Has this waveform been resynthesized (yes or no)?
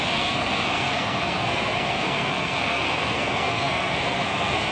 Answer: yes